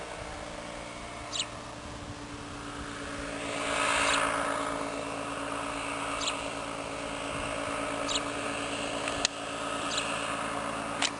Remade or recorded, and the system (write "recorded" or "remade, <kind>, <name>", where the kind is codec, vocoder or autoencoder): recorded